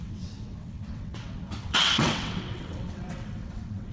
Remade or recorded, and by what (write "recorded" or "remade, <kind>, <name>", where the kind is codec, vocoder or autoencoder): remade, vocoder, WaveNeXt